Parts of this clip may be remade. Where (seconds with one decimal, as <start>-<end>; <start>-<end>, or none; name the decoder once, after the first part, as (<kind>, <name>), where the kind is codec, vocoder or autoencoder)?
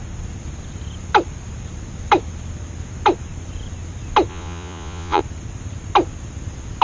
4.3-5.2 (vocoder, Vocos)